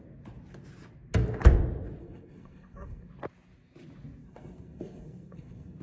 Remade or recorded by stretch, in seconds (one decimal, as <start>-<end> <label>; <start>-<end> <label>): 0.0-2.0 recorded; 2.0-3.1 remade; 3.1-4.2 recorded; 4.2-5.8 remade